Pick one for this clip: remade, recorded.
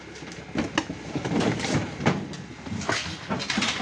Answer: recorded